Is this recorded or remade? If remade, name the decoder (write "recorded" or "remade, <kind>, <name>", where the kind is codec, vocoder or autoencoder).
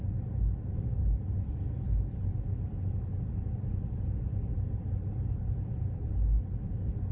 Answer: recorded